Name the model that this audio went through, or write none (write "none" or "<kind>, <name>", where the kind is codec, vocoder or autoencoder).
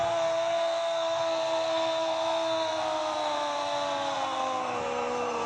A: codec, SNAC